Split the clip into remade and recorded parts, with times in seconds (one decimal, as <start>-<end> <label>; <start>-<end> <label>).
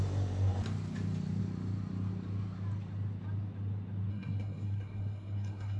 0.0-4.1 recorded; 4.1-5.8 remade